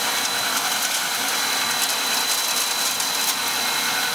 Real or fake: real